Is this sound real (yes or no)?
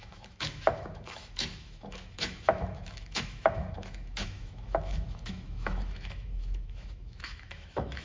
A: no